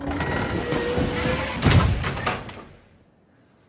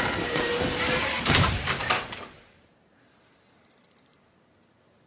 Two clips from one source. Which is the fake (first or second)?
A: second